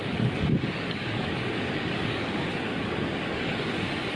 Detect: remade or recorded remade